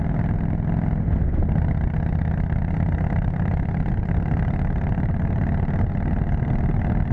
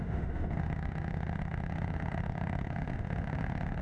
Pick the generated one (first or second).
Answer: second